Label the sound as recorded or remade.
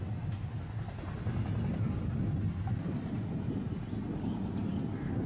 recorded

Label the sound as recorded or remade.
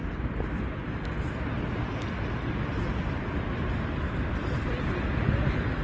recorded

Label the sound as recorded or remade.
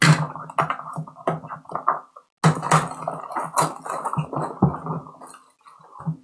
recorded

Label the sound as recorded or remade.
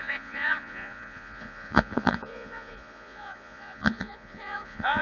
remade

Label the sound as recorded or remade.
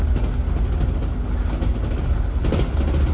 recorded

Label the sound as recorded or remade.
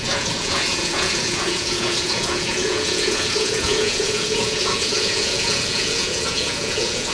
remade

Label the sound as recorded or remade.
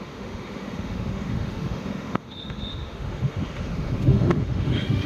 remade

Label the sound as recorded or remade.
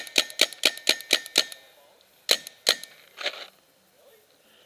recorded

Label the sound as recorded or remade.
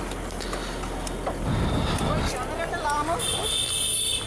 recorded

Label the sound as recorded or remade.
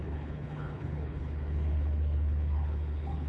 remade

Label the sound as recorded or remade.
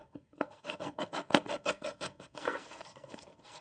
remade